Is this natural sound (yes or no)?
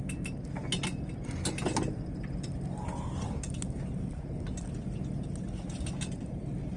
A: yes